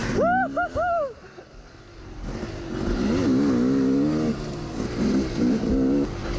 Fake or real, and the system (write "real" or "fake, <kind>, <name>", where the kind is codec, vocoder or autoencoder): real